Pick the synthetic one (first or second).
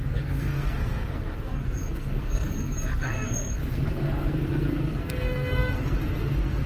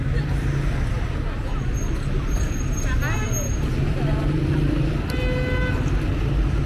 first